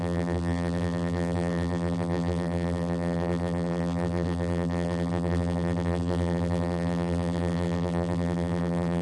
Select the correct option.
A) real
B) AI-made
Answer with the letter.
B